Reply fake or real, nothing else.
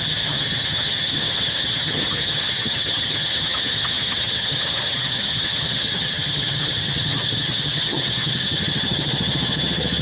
fake